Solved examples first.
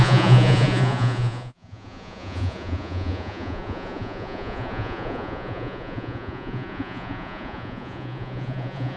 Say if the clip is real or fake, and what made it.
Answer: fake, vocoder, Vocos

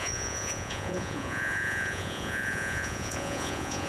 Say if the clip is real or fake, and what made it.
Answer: fake, vocoder, Vocos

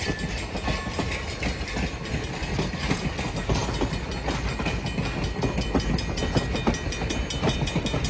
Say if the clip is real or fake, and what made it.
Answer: real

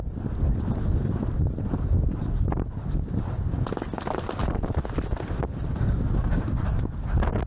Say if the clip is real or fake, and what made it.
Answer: real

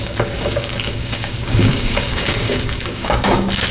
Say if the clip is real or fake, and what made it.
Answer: fake, codec, DAC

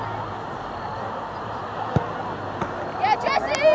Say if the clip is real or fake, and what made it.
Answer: real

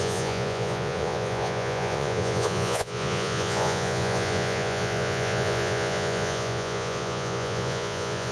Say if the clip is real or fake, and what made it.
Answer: fake, vocoder, Vocos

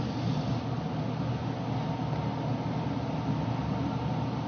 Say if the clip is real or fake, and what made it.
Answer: real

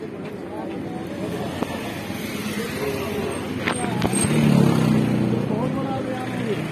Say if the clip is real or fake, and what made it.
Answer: real